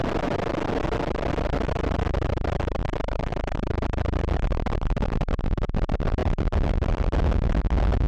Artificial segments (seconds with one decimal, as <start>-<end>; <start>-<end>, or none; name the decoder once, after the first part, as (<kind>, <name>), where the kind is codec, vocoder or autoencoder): none